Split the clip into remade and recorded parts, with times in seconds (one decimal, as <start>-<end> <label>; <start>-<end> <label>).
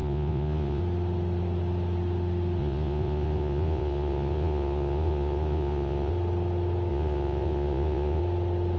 0.0-0.8 remade; 0.8-2.6 recorded; 2.6-6.1 remade; 6.1-6.9 recorded; 6.9-8.2 remade; 8.2-8.8 recorded